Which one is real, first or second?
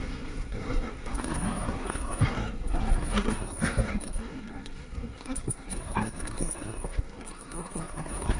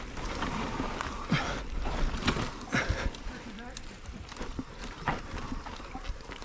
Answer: second